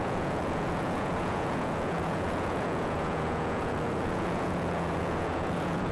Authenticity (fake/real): fake